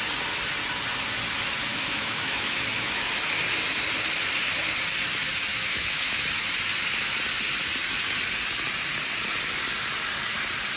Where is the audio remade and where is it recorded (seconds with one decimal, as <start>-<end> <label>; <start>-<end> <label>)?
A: 0.0-1.7 recorded; 1.7-3.1 remade; 3.1-5.5 recorded; 5.5-6.2 remade; 6.2-10.8 recorded